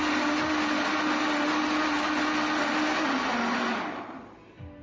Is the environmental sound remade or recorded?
recorded